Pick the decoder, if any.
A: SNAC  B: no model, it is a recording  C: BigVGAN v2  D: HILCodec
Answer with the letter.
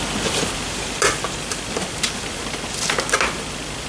B